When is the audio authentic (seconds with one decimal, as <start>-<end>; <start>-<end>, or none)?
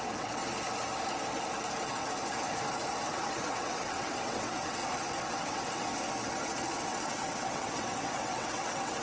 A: 0.4-3.1; 4.8-5.3; 5.9-6.8